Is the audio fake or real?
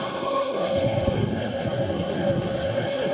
fake